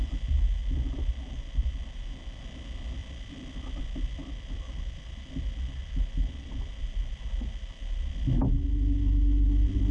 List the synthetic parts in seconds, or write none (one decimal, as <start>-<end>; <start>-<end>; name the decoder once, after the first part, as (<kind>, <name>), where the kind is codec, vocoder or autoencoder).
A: 0.6-2.4 (vocoder, BigVGAN v2); 3.0-3.8; 4.2-8.1